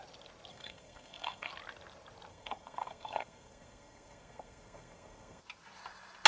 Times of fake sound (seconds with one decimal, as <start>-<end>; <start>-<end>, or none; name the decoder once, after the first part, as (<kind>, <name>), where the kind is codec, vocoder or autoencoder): 0.5-1.5 (codec, SNAC); 2.3-5.4